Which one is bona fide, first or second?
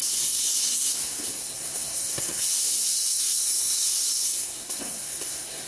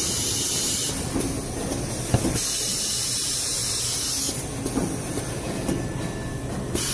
second